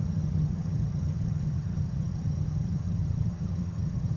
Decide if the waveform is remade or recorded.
remade